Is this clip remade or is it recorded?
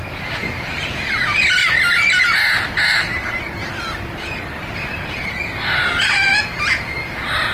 recorded